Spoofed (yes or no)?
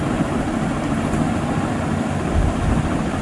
no